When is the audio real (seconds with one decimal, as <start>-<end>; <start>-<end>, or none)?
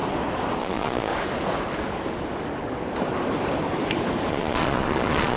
0.0-0.6; 1.1-4.3